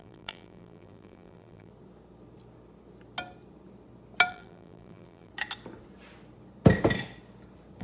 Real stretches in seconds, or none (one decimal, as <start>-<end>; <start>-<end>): 1.7-4.3; 5.3-7.8